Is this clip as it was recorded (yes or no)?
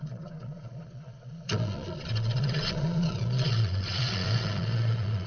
no